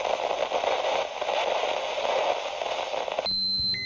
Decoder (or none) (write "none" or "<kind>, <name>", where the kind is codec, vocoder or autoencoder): none